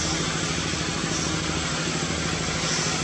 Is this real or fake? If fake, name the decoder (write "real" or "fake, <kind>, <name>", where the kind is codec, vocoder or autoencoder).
real